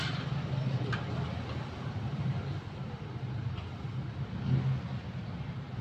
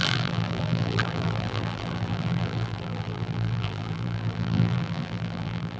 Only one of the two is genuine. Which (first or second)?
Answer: first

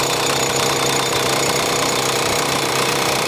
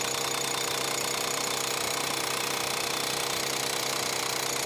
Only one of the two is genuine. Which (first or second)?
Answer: second